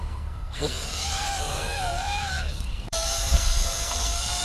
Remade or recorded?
remade